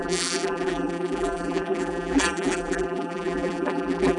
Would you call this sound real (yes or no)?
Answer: no